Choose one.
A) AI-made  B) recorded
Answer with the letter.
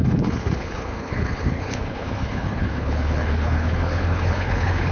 A